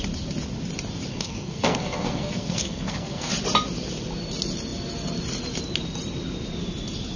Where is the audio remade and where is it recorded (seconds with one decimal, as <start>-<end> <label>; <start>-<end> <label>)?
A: 0.0-1.1 recorded; 1.1-3.3 remade; 3.3-7.2 recorded